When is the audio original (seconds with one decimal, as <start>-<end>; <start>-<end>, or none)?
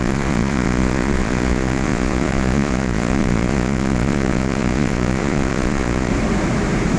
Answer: 6.1-7.0